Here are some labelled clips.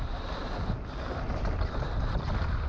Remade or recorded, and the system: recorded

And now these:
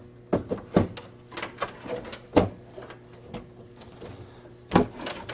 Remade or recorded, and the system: recorded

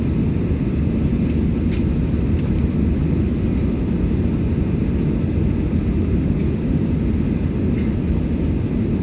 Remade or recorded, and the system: recorded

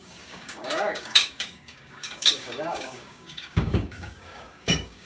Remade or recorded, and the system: remade, codec, DAC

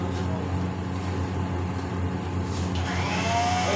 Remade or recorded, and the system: recorded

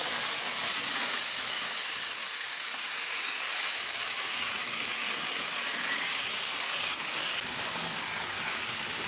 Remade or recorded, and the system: remade, codec, DAC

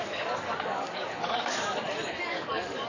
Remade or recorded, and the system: remade, codec, DAC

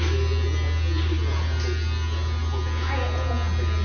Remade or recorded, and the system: recorded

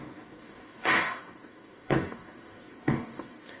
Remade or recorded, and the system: remade, codec, DAC